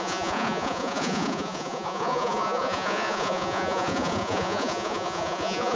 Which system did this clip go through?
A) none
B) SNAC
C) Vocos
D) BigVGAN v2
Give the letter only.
C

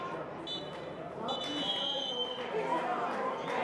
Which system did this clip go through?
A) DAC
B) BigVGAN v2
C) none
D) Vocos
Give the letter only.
C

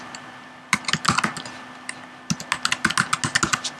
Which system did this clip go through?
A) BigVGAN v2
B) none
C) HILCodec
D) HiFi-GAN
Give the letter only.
B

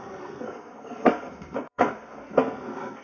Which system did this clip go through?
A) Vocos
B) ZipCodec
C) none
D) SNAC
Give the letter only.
D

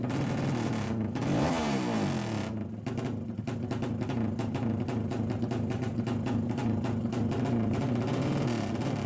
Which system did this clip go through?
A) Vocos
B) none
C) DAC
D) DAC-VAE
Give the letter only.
B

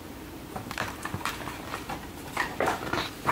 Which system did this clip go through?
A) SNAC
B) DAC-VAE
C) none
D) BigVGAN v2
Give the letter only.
D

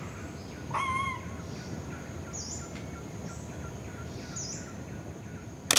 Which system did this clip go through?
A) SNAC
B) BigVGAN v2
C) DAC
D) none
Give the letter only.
D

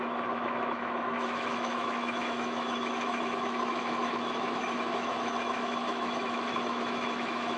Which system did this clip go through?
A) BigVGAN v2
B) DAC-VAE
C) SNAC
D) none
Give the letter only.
B